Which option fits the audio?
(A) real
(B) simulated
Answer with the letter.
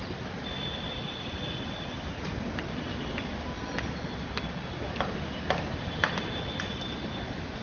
A